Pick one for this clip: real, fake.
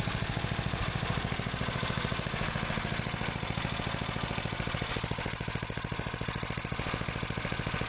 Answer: real